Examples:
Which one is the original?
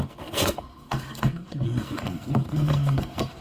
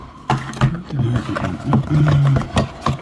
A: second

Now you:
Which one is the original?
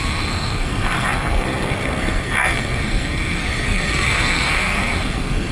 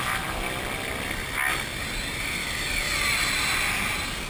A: second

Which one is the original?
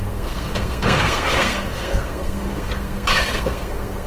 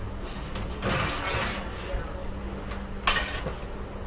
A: second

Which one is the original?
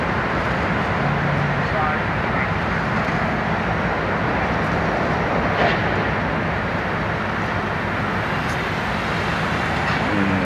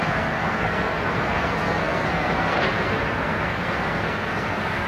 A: first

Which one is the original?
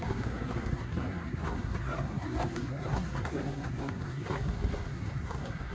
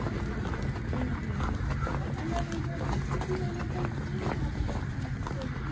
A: second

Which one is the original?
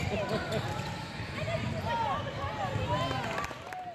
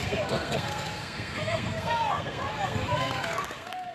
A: first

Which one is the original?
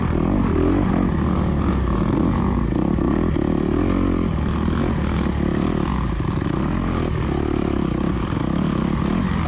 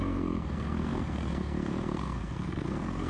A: first